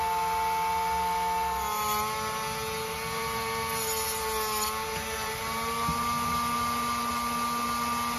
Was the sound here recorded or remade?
recorded